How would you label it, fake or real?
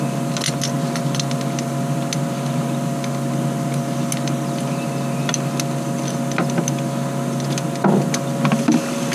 real